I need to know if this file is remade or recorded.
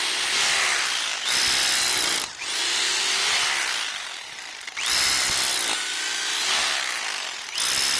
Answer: recorded